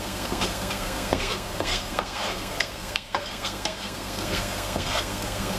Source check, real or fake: fake